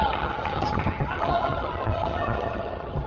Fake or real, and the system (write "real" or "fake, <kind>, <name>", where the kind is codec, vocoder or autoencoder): fake, vocoder, HiFi-GAN